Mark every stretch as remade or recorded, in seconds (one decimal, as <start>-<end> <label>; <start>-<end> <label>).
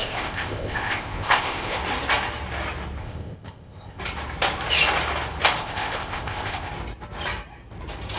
0.0-1.8 remade; 1.8-3.0 recorded; 3.0-4.0 remade; 4.0-5.6 recorded; 5.6-6.7 remade; 6.7-8.2 recorded